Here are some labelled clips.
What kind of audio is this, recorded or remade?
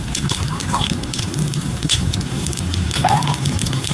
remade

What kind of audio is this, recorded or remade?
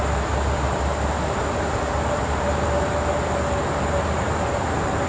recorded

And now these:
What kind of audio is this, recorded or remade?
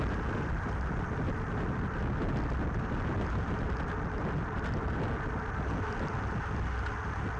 recorded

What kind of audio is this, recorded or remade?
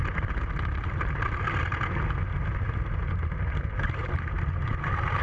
recorded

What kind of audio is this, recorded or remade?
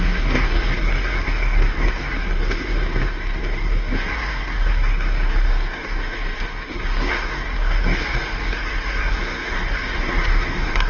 remade